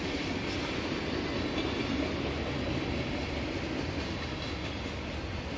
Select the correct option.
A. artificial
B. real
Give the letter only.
B